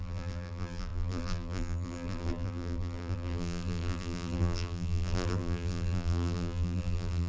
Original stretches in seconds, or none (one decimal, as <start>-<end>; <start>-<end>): none